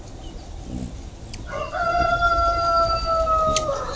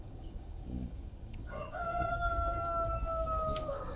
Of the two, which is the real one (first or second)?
first